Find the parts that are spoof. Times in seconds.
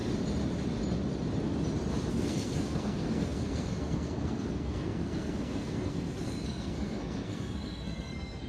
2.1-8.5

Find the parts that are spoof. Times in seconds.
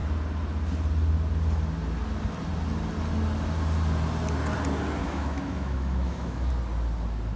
5.0-6.5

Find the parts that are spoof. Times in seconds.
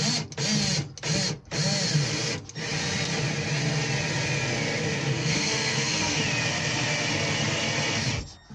5.1-6.2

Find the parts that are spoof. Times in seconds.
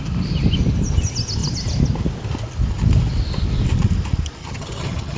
4.4-5.2